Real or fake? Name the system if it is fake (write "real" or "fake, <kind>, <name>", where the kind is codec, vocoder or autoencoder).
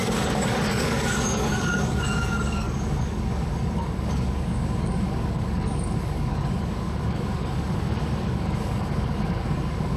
fake, codec, DAC